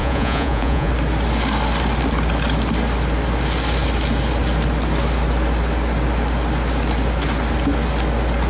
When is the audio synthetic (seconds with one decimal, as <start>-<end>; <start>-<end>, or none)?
0.0-0.9

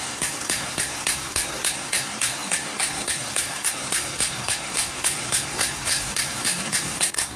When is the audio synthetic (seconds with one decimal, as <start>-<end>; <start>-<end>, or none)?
0.0-7.4

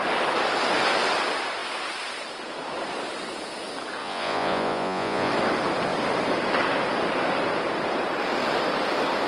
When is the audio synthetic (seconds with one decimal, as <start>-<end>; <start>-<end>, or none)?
4.0-5.3

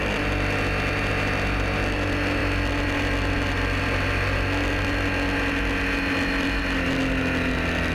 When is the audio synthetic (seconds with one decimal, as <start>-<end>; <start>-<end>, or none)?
none

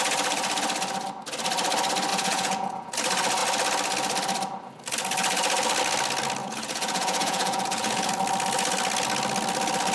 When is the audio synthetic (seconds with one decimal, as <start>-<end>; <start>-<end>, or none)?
2.1-2.9; 6.4-8.1

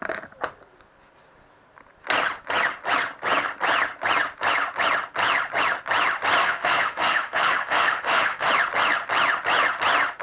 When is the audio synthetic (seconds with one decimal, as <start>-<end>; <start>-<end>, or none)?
6.4-8.5

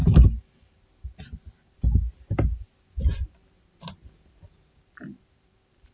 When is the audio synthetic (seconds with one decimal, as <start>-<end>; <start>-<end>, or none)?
3.5-5.9